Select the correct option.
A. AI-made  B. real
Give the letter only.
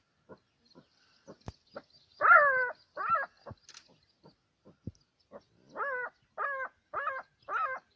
B